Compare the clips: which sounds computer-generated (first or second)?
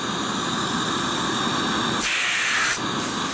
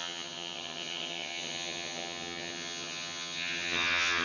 second